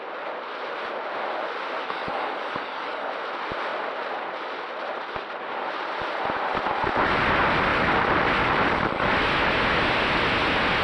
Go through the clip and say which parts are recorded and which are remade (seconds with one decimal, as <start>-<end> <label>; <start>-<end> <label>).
0.0-1.8 recorded; 1.8-3.1 remade; 3.1-10.8 recorded